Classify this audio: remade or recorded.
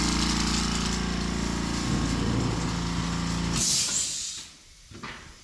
recorded